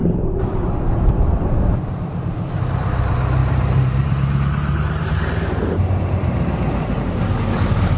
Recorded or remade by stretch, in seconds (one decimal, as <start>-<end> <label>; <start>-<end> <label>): 0.0-2.0 remade; 2.0-3.4 recorded; 3.4-7.2 remade; 7.2-8.0 recorded